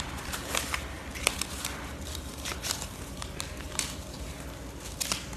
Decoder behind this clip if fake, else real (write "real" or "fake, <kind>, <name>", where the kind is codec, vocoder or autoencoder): fake, vocoder, BigVGAN v2